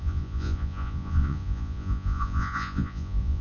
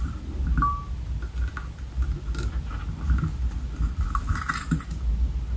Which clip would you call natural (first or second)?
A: second